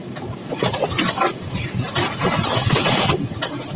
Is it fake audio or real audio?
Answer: real